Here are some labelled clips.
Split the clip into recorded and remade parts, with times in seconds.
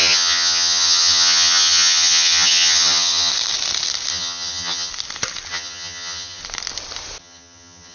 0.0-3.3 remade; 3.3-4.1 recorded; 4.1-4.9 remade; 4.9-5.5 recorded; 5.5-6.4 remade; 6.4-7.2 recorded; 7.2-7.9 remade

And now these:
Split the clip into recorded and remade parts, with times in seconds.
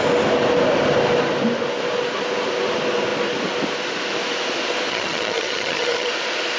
0.0-4.9 recorded; 4.9-6.1 remade; 6.1-6.6 recorded